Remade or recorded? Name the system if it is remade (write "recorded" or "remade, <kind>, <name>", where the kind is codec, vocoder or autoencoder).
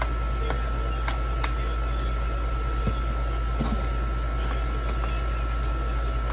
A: recorded